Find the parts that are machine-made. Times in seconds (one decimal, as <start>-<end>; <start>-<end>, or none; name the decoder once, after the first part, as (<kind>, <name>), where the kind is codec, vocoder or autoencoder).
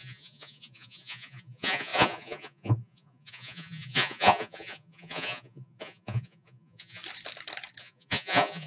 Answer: 0.0-7.0 (vocoder, Vocos); 7.8-8.7